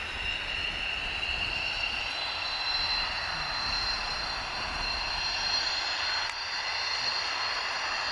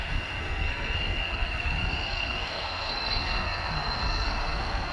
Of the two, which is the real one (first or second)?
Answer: first